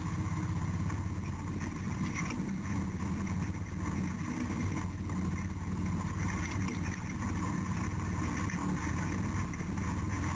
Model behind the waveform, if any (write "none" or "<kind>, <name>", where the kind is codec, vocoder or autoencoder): none